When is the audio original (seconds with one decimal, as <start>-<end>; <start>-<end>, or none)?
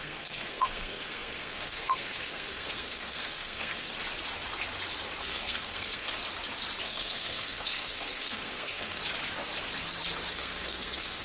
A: 3.9-5.2; 6.2-6.8; 9.0-10.3